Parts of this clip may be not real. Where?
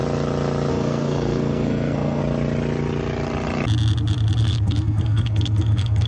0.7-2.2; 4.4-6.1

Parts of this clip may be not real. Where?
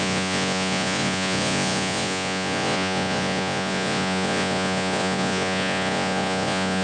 0.0-6.8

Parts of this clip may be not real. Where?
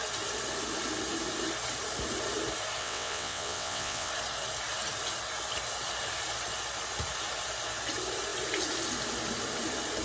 2.8-4.1